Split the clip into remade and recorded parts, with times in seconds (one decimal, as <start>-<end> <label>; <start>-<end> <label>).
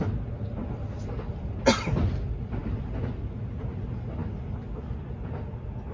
0.0-5.9 recorded